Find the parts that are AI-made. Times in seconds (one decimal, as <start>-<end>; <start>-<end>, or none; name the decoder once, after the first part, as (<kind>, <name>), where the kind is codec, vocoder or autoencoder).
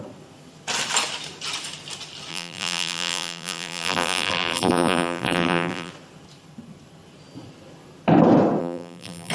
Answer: 2.3-5.9 (vocoder, BigVGAN v2); 8.6-9.3